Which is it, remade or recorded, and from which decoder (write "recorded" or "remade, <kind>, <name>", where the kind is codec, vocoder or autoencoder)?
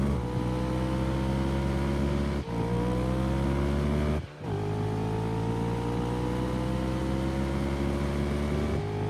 recorded